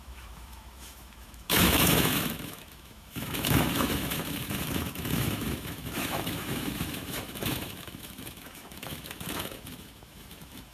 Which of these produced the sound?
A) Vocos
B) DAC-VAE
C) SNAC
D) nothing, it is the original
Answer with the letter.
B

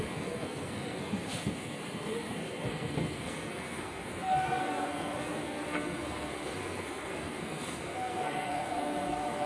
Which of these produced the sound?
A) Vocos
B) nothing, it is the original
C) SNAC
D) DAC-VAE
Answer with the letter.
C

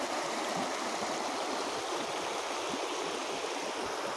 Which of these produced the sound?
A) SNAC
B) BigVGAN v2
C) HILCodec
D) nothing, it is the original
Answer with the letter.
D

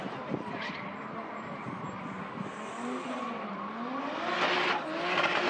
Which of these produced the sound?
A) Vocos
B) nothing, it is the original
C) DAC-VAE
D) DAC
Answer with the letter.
B